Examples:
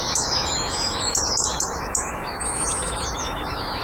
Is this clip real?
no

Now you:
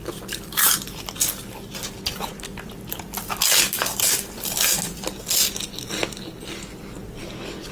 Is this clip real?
yes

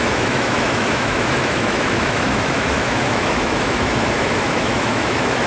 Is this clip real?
no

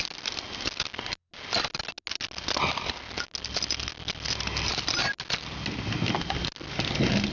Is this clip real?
yes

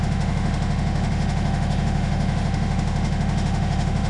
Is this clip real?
no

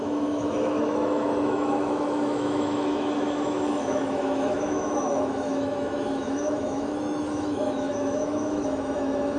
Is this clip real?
no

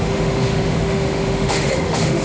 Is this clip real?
no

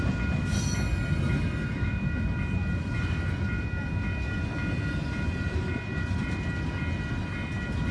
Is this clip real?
yes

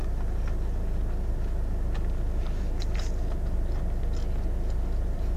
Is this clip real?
yes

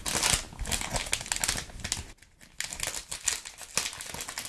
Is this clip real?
yes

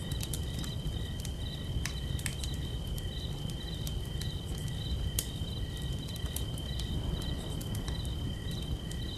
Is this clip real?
yes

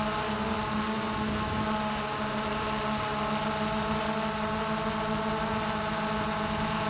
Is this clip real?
yes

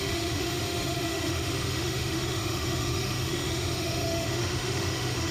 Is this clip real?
no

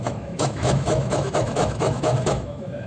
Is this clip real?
no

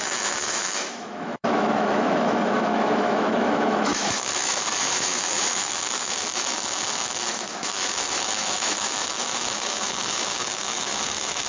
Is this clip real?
no